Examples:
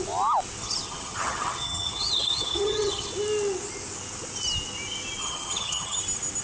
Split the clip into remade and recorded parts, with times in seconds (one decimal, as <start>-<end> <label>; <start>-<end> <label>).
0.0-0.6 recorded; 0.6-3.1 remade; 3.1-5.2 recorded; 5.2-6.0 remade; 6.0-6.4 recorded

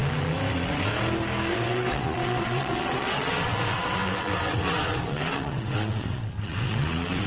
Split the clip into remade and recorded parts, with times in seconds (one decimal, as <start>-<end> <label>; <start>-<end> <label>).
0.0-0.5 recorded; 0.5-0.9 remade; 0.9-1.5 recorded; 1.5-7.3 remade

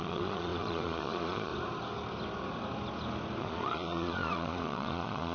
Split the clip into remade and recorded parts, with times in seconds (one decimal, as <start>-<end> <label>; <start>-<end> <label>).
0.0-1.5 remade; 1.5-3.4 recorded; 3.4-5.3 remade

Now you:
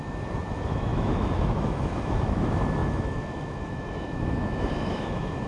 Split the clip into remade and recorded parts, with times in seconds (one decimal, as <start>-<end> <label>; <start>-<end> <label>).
0.0-5.5 remade

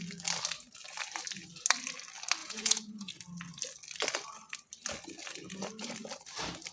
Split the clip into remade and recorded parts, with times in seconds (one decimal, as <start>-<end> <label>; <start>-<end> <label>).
0.0-2.4 recorded; 2.4-3.1 remade; 3.1-6.7 recorded

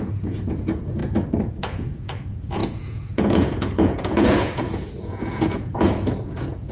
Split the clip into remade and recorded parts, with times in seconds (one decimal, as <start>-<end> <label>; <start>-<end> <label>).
0.0-1.0 remade; 1.0-1.5 recorded; 1.5-6.7 remade